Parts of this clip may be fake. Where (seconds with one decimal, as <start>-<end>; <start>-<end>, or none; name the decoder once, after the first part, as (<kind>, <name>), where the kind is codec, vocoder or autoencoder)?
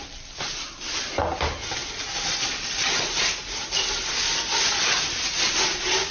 none